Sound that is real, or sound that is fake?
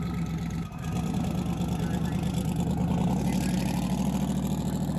real